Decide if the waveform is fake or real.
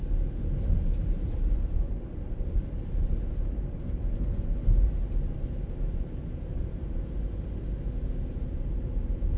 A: real